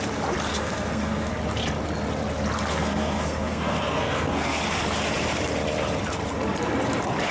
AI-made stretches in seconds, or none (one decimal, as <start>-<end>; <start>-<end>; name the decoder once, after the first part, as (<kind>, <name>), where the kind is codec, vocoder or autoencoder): 0.5-1.3 (codec, SNAC); 2.7-4.6

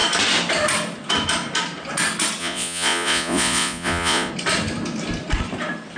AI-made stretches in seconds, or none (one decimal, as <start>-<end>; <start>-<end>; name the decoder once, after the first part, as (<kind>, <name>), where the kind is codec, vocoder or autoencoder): 2.4-4.3 (vocoder, Vocos)

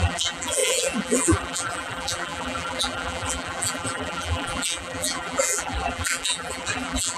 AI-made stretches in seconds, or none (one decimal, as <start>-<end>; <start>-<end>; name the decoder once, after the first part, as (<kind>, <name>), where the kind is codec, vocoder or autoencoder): 0.0-7.2 (vocoder, BigVGAN v2)

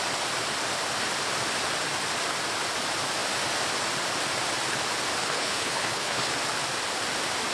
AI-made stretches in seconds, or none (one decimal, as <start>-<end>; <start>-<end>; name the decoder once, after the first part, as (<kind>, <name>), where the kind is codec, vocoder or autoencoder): 5.2-6.3 (codec, HILCodec)